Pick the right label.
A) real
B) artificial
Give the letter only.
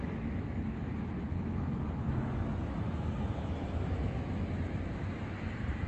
B